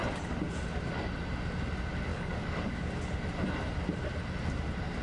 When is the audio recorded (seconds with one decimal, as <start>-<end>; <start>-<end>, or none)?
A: 0.0-2.1; 2.9-5.0